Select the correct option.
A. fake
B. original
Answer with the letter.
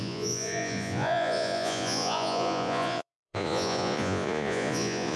A